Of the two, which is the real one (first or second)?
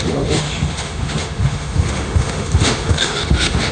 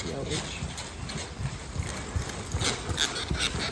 second